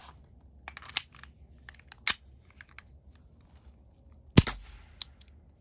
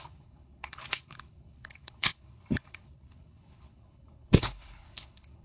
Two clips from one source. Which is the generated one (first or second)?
second